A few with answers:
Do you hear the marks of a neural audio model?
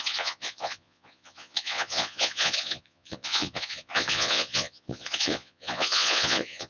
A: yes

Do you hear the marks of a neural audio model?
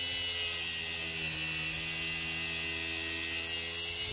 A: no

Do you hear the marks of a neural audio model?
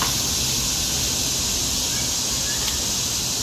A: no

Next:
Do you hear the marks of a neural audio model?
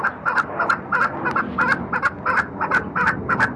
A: yes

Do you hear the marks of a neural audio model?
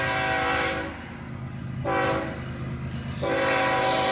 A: no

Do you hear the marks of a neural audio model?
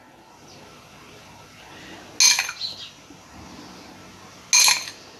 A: no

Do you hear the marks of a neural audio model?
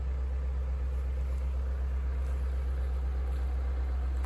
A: no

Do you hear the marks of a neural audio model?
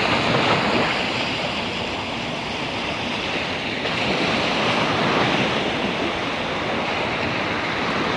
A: no